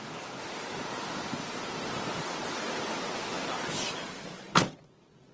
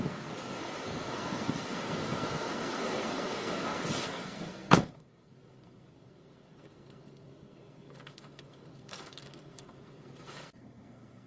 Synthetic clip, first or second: second